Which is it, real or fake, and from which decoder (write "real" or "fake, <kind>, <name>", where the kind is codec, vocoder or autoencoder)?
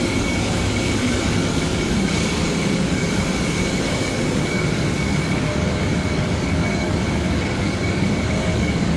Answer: fake, codec, DAC